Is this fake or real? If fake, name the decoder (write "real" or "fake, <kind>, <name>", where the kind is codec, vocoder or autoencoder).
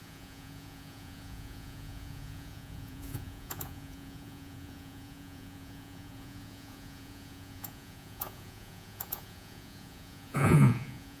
fake, vocoder, Vocos